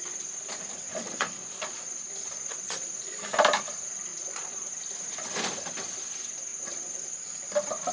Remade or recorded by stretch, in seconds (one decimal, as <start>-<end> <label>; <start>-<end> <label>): 0.0-0.9 recorded; 0.9-3.2 remade; 3.2-4.1 recorded; 4.1-4.7 remade; 4.7-6.5 recorded; 6.5-7.4 remade; 7.4-7.9 recorded